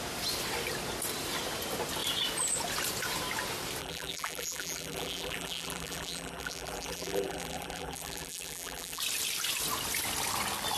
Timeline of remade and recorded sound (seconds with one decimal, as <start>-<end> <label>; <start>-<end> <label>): 0.0-3.8 recorded; 3.8-9.0 remade; 9.0-10.8 recorded